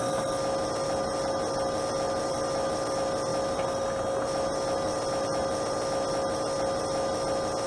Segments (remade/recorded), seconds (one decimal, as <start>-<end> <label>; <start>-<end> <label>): 0.0-7.7 recorded